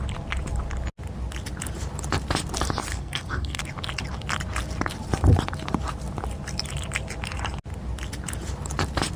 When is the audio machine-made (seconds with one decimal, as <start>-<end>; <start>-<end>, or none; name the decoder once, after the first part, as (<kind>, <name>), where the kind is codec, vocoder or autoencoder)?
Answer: 2.9-3.6 (codec, SNAC)